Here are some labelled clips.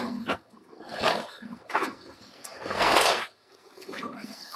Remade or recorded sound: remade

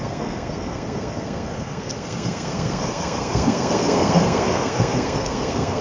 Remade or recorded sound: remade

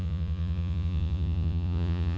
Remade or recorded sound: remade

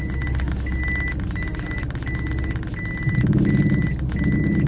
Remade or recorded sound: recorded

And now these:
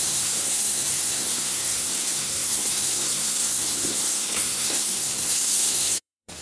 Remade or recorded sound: remade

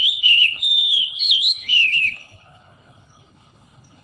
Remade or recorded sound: remade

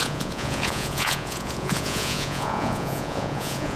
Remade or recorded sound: remade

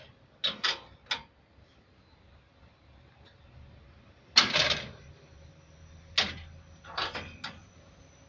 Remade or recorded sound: recorded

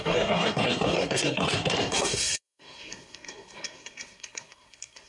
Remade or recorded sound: remade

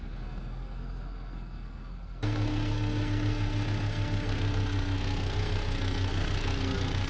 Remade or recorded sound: remade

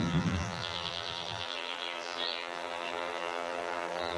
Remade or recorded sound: remade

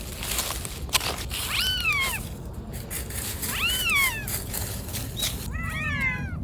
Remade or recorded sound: recorded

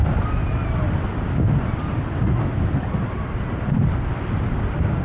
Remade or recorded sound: recorded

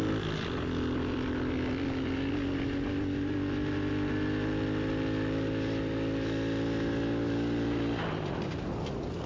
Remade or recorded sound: recorded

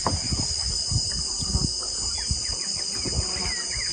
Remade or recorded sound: recorded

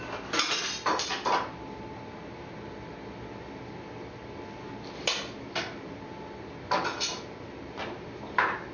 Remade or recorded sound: recorded